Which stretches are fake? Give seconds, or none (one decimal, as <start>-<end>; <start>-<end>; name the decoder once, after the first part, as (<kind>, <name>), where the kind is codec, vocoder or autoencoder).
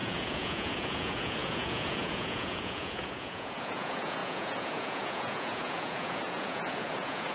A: 0.0-7.3 (vocoder, Vocos)